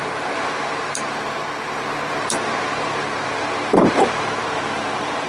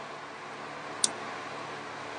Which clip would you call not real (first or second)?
first